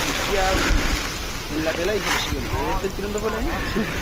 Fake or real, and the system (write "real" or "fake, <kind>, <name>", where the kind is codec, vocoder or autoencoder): real